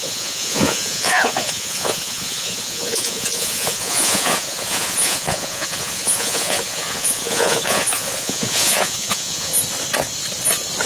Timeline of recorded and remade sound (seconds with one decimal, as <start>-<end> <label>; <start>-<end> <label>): 0.0-9.5 remade; 9.5-10.9 recorded